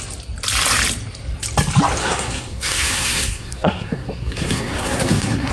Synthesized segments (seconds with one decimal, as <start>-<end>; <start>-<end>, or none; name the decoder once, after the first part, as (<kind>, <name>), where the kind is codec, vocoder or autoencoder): 2.0-5.5 (codec, SNAC)